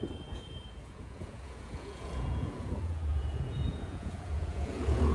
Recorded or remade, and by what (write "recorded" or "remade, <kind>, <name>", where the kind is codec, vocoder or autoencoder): remade, vocoder, Vocos